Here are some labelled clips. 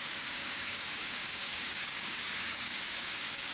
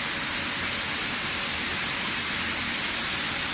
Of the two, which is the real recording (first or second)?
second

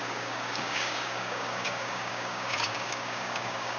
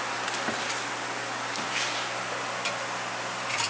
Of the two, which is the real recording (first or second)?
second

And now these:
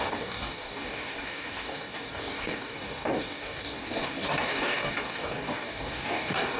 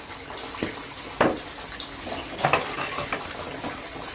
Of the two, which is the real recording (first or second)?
second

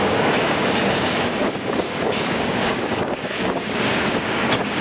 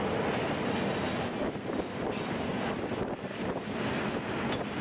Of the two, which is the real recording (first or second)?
second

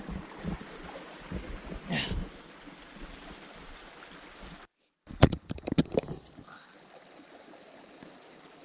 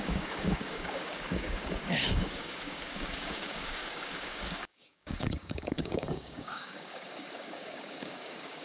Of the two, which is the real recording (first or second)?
first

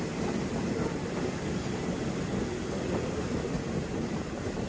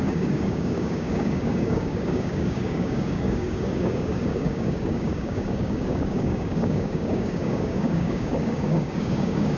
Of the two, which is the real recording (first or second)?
first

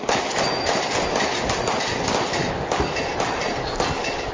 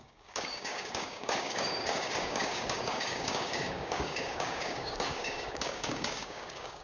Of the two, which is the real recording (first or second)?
first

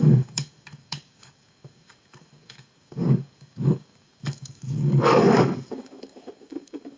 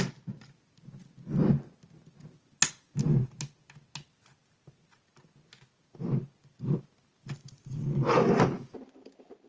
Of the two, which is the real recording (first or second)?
second